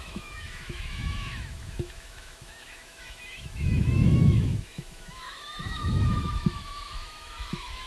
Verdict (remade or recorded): remade